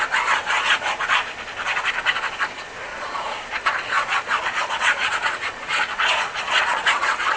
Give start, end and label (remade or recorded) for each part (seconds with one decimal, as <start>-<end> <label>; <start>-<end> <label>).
0.0-2.9 recorded; 2.9-7.4 remade